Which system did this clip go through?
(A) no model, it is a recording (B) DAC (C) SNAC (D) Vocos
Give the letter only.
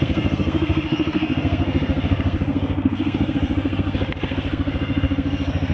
C